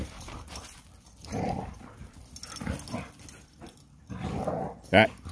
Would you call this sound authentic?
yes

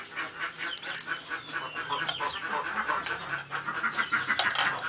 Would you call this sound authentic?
yes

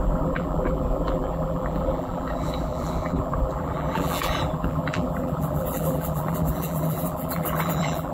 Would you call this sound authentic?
no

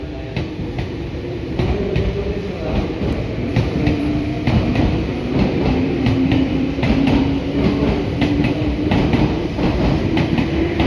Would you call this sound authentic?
no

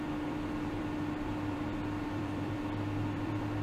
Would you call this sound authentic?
no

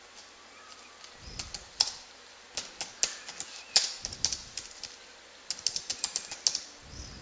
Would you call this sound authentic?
yes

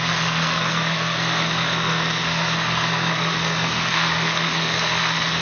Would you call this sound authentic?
no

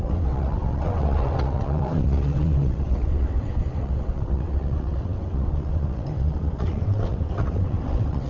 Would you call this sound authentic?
no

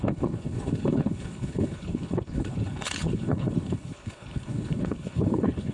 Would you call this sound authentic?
no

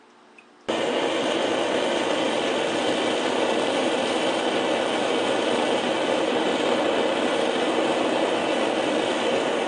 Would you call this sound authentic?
yes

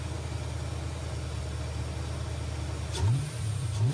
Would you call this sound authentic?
yes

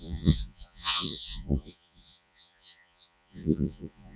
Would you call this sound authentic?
no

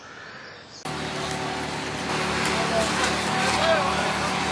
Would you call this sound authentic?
yes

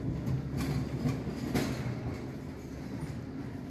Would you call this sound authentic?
yes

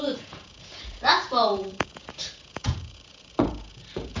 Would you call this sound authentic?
no